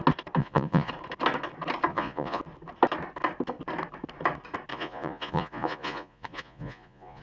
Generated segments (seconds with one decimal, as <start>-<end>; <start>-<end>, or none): 0.4-0.9; 1.9-2.4; 4.7-7.2